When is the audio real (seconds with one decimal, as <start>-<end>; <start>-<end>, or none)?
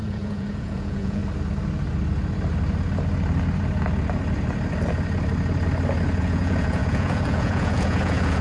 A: 1.2-6.2